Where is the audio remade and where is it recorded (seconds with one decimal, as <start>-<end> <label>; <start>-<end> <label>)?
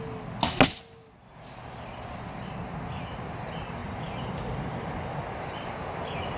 0.0-3.8 recorded; 3.8-5.3 remade; 5.3-6.4 recorded